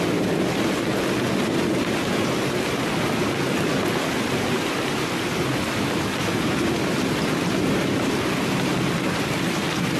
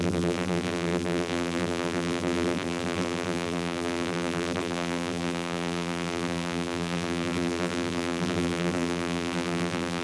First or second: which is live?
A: first